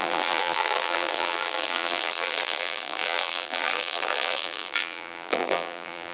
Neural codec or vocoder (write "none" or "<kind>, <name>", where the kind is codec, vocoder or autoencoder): vocoder, BigVGAN v2